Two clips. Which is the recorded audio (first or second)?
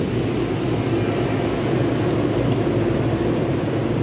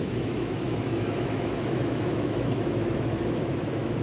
first